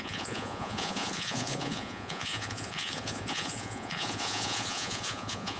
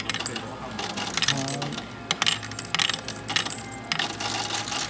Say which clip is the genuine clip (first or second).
second